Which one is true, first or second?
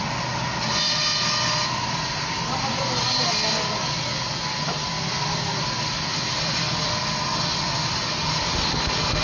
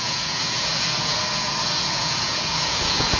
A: first